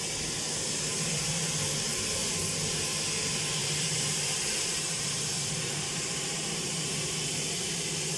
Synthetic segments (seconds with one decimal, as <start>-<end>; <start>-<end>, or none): 0.9-1.4; 3.6-7.7